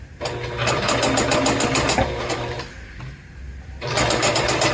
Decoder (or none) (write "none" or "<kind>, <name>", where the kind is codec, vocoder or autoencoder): none